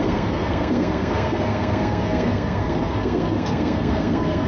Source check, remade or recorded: remade